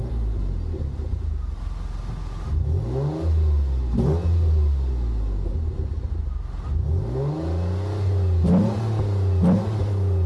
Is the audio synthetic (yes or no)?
no